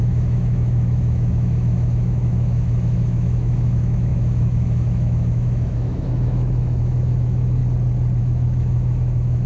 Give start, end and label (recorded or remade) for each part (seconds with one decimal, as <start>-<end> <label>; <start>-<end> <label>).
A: 0.0-7.6 remade; 7.6-8.2 recorded; 8.2-9.5 remade